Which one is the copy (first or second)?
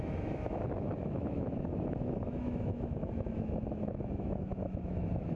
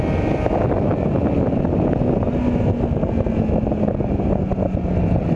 first